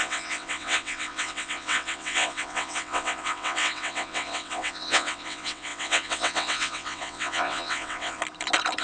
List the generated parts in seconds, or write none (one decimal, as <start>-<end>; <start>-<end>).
0.0-8.2